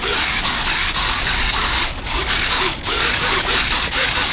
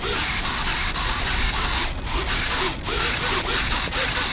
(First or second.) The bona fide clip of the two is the second